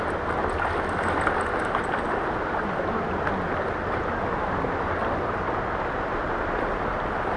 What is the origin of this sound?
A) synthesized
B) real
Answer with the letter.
B